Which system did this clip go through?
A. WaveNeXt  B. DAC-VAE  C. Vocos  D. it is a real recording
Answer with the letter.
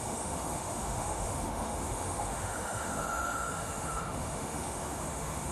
B